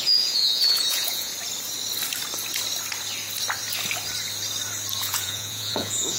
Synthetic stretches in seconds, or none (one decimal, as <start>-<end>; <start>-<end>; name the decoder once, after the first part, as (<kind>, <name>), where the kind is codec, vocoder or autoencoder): 0.0-1.3 (vocoder, Vocos); 5.0-6.2